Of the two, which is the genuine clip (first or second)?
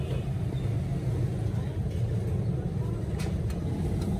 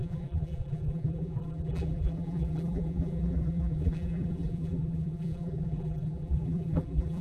first